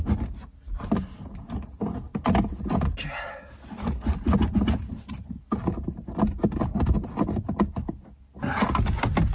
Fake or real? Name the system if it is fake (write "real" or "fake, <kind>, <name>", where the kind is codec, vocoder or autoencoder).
real